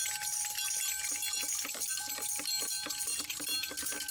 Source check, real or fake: real